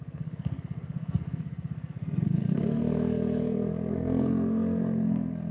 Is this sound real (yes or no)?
no